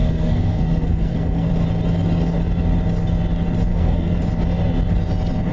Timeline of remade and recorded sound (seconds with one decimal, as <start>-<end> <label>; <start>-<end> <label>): 0.0-1.5 remade; 1.5-3.7 recorded; 3.7-4.2 remade; 4.2-5.5 recorded